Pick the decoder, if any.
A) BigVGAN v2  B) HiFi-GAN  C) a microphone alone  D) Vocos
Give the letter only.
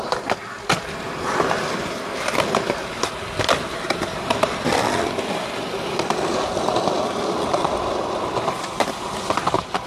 A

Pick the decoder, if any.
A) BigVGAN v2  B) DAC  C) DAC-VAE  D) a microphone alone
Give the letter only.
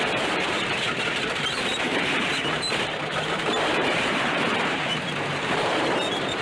A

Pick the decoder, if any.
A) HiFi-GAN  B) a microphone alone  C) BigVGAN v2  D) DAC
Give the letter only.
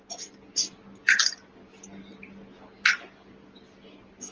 B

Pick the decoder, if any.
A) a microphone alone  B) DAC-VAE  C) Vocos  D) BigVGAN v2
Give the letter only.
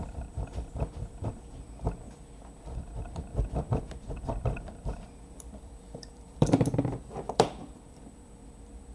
D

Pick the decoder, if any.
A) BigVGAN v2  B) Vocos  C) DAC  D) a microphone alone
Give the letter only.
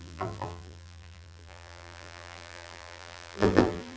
A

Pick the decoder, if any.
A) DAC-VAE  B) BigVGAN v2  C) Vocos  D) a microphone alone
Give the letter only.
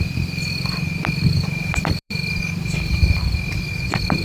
B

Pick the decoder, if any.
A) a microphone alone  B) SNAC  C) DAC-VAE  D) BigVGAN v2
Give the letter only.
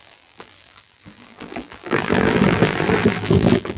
D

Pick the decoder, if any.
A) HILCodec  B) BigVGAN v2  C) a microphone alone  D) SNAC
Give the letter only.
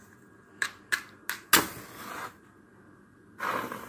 C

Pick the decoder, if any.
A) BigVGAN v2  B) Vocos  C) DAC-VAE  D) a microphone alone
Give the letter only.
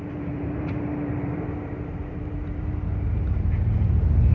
A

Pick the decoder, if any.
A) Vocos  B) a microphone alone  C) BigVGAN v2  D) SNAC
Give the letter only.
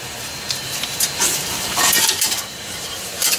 C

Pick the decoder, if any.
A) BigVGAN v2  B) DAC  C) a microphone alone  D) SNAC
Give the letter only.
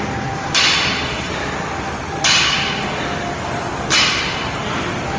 C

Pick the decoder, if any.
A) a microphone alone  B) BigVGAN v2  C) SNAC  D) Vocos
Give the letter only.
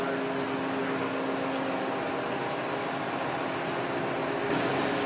A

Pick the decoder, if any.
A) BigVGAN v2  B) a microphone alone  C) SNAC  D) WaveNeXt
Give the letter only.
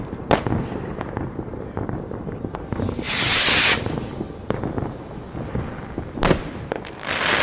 A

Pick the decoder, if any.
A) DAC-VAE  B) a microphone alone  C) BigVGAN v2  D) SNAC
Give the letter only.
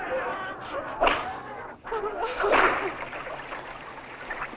B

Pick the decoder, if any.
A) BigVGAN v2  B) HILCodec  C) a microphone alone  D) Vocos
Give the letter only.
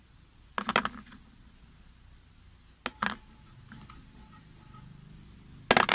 C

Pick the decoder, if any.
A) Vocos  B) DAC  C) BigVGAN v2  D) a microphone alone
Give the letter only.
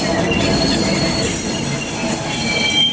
D